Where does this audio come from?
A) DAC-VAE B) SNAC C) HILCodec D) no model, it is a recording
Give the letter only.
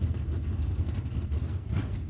B